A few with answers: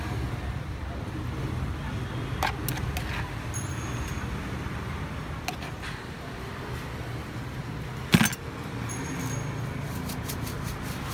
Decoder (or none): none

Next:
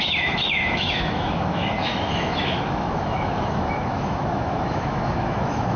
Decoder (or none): autoencoder, DAC-VAE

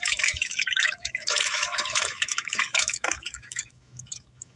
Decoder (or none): autoencoder, DAC-VAE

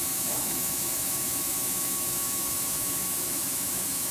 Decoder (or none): autoencoder, DAC-VAE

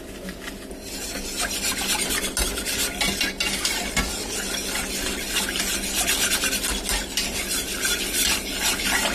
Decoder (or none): none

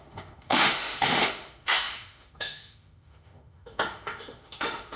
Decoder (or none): autoencoder, DAC-VAE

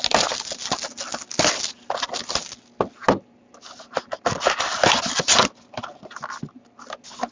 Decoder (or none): none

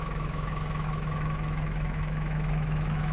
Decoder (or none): autoencoder, DAC-VAE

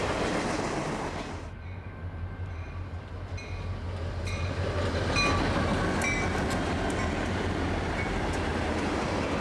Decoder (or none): none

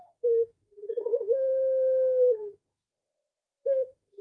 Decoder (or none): autoencoder, DAC-VAE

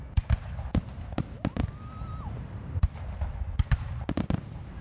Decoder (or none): none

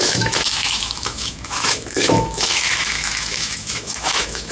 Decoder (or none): autoencoder, DAC-VAE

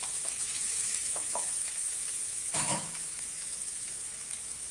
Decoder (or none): autoencoder, DAC-VAE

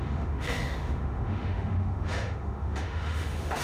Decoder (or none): autoencoder, DAC-VAE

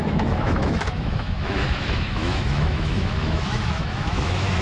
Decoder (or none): autoencoder, DAC-VAE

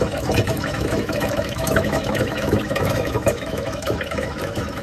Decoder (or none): autoencoder, DAC-VAE